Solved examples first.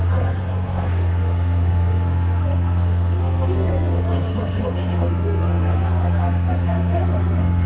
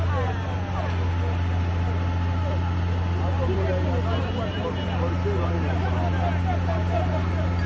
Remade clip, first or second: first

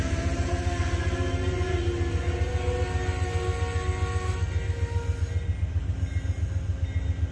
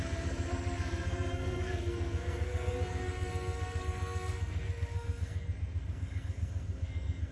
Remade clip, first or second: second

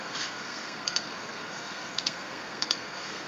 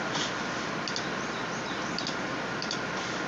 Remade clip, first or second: first